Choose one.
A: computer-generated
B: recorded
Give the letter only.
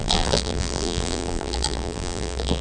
A